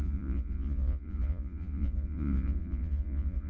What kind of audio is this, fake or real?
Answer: fake